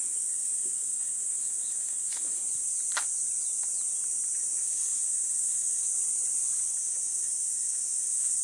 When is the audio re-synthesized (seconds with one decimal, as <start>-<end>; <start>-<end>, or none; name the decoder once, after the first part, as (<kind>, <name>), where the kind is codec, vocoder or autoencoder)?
0.0-2.4 (autoencoder, DAC-VAE); 4.4-5.9; 6.8-8.4